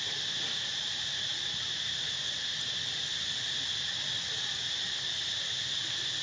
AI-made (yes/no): no